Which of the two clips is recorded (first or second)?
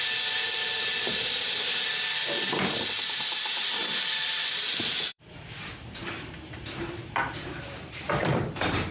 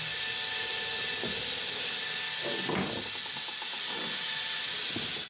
second